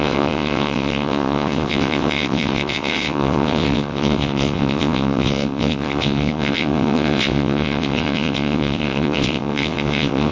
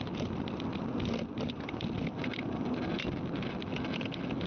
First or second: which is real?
second